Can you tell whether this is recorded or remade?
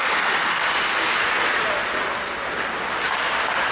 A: recorded